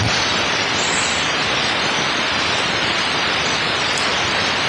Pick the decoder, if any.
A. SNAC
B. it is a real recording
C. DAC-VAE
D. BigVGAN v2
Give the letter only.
B